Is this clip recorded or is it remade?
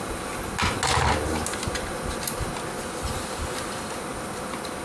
recorded